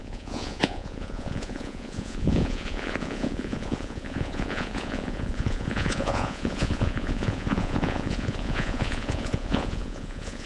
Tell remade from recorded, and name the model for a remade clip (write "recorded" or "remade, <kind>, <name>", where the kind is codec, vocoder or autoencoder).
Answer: remade, vocoder, Vocos